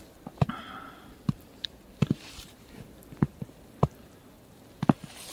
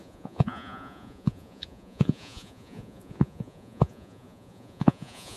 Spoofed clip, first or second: second